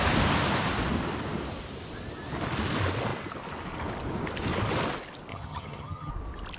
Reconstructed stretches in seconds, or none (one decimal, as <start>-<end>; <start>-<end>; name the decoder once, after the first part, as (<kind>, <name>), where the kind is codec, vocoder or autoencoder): 5.3-6.1 (vocoder, HiFi-GAN)